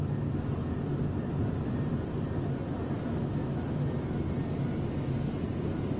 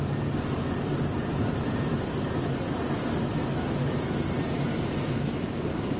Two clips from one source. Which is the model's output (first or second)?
second